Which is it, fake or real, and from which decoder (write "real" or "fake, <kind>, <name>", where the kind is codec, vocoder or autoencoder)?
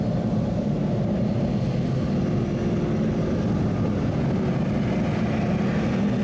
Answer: real